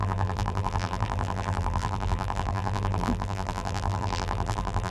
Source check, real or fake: fake